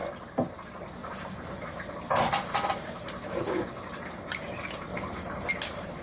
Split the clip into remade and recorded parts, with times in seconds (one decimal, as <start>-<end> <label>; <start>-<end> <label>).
0.0-1.0 recorded; 1.0-1.5 remade; 1.5-4.9 recorded; 4.9-5.5 remade; 5.5-6.0 recorded